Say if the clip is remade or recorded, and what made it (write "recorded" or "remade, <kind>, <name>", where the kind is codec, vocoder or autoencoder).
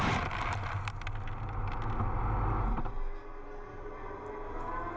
recorded